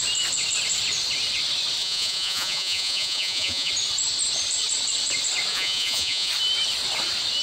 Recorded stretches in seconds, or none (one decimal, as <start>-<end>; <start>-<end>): 0.0-1.8; 3.7-5.5; 6.3-7.4